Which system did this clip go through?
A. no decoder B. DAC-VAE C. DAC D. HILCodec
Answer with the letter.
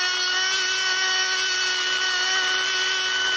A